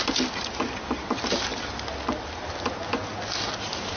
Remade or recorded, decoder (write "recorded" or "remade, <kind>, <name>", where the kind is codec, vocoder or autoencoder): recorded